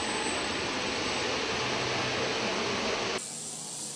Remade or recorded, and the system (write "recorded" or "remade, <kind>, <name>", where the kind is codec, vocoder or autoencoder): recorded